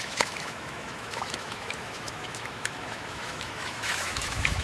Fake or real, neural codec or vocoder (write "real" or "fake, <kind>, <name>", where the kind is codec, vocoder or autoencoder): fake, autoencoder, DAC-VAE